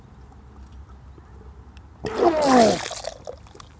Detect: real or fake real